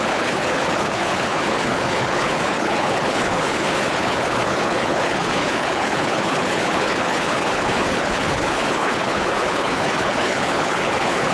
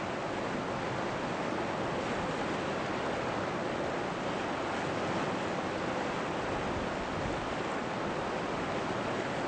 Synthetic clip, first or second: first